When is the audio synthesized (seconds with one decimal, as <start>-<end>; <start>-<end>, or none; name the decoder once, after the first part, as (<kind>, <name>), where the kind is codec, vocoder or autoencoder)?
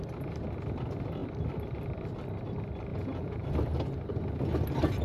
2.9-3.4 (vocoder, Vocos)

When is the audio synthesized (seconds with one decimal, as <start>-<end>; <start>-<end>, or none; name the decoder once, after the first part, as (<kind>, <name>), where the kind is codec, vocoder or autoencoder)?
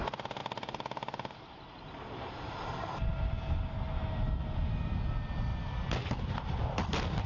none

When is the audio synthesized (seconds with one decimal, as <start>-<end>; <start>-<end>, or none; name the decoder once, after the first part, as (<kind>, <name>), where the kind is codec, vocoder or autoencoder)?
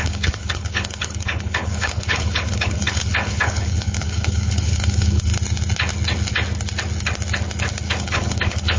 0.0-5.3 (codec, HILCodec); 8.0-8.8